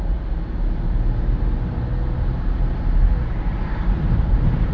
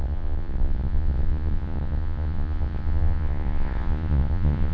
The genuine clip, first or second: first